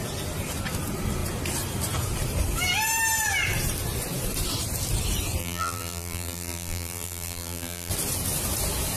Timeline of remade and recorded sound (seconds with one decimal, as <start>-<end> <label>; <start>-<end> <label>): 0.0-5.4 recorded; 5.4-7.9 remade; 7.9-9.0 recorded